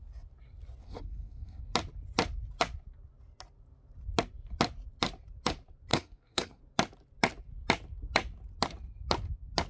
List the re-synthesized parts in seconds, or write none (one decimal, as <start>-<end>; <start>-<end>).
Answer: 0.8-1.6; 5.9-6.6